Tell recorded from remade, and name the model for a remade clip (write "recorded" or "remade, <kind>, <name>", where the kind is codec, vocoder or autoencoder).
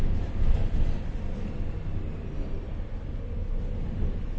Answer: recorded